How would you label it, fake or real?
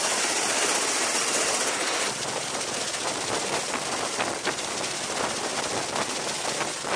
real